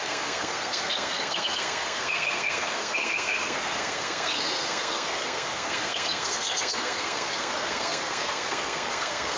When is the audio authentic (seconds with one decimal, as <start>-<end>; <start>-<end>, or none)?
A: none